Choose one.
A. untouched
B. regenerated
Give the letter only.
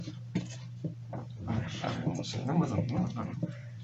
B